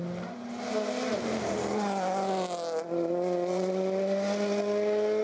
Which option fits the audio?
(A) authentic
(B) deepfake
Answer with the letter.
A